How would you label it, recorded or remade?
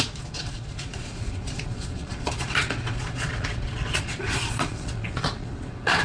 remade